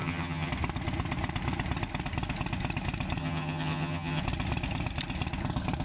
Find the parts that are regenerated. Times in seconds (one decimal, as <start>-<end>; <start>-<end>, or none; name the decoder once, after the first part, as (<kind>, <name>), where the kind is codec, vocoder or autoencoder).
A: 0.0-0.5 (vocoder, HiFi-GAN); 3.2-4.2